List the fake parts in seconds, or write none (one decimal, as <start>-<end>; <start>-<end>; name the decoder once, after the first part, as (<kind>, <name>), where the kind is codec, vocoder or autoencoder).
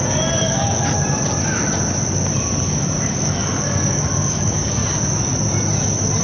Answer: 0.0-0.8 (codec, DAC); 2.6-4.8